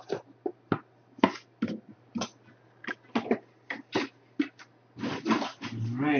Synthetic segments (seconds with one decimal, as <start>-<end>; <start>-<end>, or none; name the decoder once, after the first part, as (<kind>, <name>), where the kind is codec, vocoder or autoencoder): none